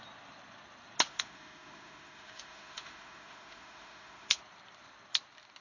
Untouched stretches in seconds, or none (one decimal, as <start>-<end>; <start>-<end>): 0.0-1.1; 4.4-5.6